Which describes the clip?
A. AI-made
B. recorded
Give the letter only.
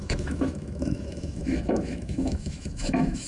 A